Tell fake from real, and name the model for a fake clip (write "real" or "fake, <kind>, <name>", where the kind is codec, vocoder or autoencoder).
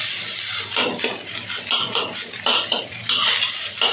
fake, vocoder, BigVGAN v2